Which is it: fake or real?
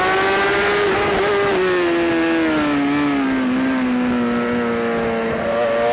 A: real